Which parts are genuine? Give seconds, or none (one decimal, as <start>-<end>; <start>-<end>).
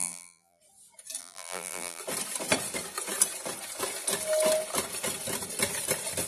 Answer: 0.6-1.2; 2.0-6.3